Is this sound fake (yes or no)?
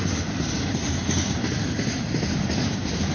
no